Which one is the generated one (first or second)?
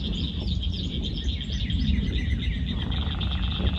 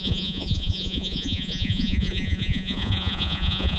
second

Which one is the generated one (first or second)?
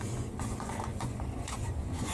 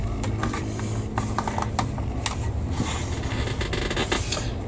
first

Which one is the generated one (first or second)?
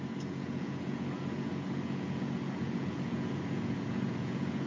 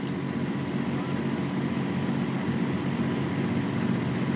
first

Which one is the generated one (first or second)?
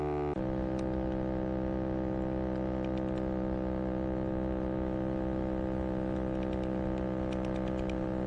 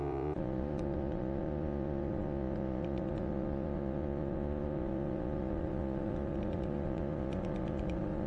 second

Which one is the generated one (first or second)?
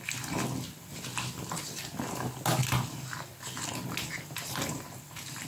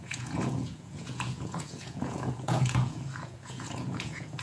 second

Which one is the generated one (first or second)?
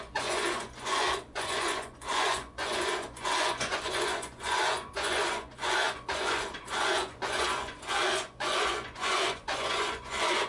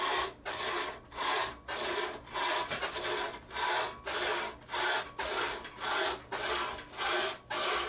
first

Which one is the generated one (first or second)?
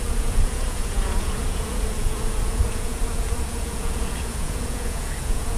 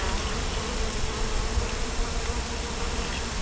first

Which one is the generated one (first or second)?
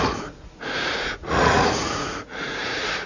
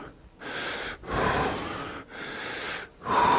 first